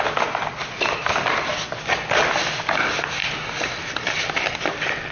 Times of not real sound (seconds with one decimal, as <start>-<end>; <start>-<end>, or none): none